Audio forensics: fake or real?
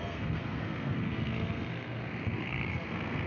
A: fake